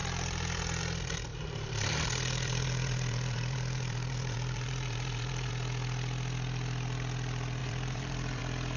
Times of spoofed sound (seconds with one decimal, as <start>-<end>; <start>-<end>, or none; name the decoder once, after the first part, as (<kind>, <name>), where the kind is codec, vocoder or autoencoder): 1.3-5.5 (vocoder, BigVGAN v2); 7.6-8.4